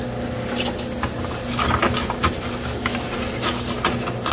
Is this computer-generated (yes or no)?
no